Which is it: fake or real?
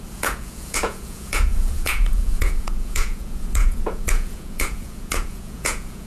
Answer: fake